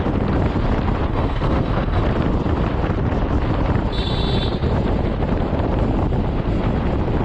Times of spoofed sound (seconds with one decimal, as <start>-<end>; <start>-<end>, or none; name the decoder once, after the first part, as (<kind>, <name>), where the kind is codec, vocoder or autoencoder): 1.1-2.0 (codec, SNAC)